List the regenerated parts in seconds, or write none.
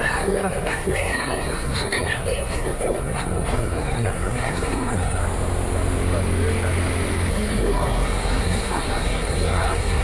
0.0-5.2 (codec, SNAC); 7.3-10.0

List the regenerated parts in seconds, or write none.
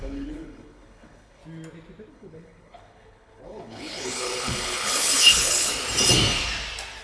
0.0-1.4 (codec, HILCodec); 2.1-5.7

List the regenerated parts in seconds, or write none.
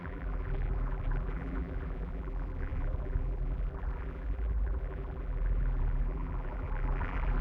0.0-7.4 (vocoder, BigVGAN v2)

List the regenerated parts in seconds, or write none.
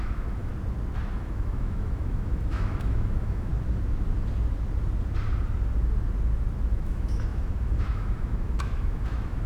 0.0-0.5 (autoencoder, DAC-VAE); 1.1-3.5; 6.7-9.5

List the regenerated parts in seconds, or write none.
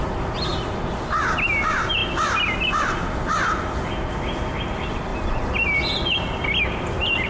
none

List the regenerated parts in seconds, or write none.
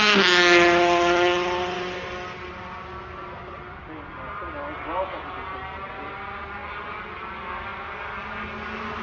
none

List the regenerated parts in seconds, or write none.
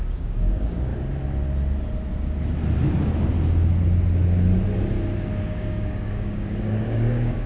0.0-0.9 (codec, DAC); 5.4-7.5